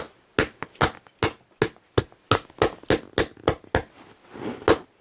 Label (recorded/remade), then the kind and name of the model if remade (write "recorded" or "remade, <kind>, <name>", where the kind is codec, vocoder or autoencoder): recorded